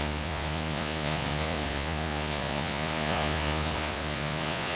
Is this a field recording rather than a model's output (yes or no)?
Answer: no